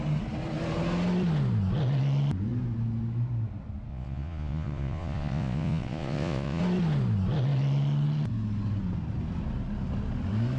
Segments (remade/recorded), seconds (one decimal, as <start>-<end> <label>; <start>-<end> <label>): 0.0-3.9 recorded; 3.9-6.6 remade; 6.6-10.6 recorded